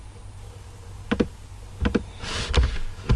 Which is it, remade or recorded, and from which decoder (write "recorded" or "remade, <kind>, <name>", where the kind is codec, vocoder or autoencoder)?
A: recorded